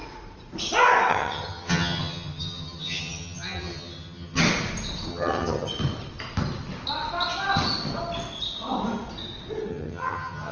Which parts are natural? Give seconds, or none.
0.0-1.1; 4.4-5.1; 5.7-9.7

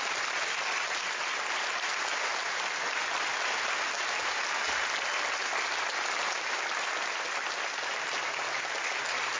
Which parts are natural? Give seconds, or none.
0.0-9.4

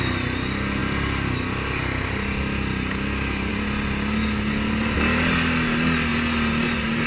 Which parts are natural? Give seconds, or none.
0.0-7.1

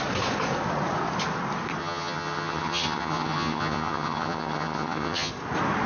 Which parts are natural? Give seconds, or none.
0.0-1.8; 5.3-5.9